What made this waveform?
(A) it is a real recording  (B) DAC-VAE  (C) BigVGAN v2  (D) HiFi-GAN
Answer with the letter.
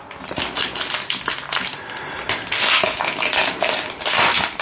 A